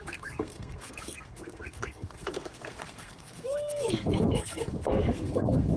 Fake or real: fake